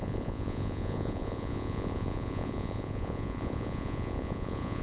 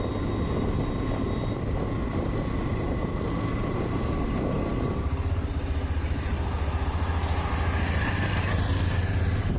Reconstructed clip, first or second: first